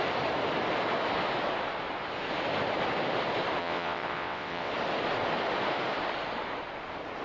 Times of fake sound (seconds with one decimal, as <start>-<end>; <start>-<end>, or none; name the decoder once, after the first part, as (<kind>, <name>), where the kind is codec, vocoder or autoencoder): 3.6-4.7 (vocoder, WaveNeXt)